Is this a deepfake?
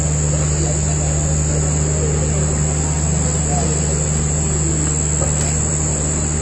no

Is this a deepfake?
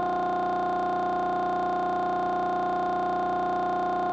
no